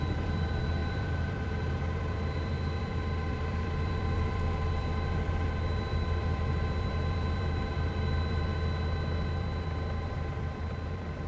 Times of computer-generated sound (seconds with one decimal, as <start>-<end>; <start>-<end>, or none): 0.0-8.5; 9.2-11.3